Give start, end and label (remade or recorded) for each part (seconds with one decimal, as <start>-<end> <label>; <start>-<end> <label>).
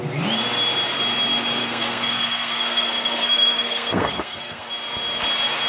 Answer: 0.0-1.6 recorded; 1.6-4.7 remade; 4.7-5.7 recorded